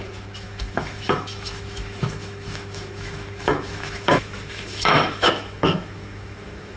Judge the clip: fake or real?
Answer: fake